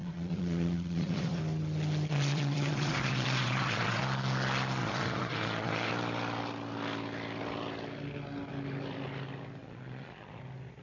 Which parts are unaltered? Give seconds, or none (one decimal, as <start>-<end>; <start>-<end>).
1.4-2.1; 4.0-4.8; 5.9-9.6; 10.4-10.8